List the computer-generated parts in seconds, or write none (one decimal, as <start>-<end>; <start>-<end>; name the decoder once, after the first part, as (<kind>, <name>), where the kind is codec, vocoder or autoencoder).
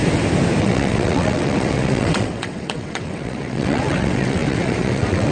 0.6-5.3 (vocoder, WaveNeXt)